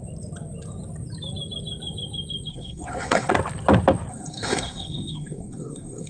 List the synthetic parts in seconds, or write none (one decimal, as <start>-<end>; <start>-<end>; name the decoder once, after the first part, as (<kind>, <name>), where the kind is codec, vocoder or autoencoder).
2.5-3.3 (codec, SNAC); 4.1-6.1